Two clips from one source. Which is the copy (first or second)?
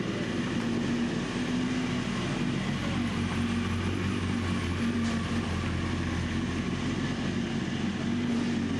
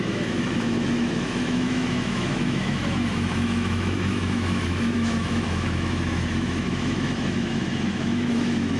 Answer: second